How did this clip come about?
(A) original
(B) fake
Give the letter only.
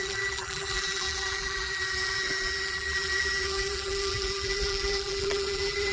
B